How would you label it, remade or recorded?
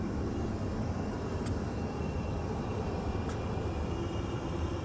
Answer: remade